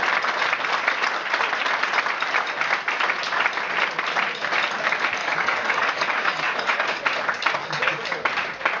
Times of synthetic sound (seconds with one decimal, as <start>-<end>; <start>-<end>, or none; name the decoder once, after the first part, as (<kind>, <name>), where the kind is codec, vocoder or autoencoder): 5.2-7.0 (codec, DAC); 7.6-8.2